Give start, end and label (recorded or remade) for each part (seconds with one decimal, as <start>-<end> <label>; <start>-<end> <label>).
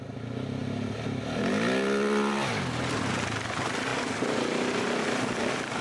0.0-0.6 recorded; 0.6-3.0 remade; 3.0-3.9 recorded; 3.9-5.2 remade; 5.2-5.8 recorded